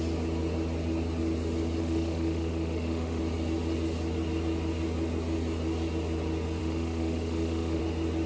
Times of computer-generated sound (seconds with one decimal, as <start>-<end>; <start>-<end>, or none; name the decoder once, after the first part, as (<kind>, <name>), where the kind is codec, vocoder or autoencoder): 1.8-3.2 (autoencoder, DAC-VAE); 6.6-7.8